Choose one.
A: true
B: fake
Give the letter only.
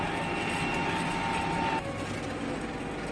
A